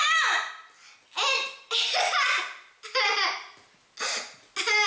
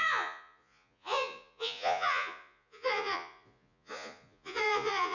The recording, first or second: first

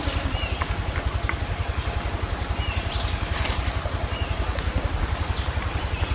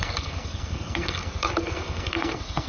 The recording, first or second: first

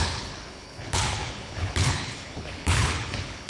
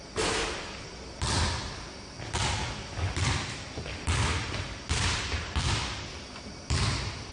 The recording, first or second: second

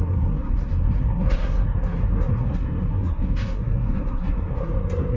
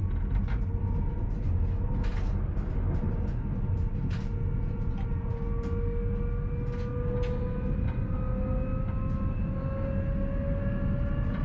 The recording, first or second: second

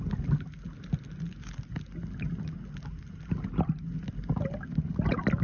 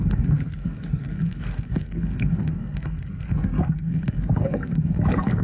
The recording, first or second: first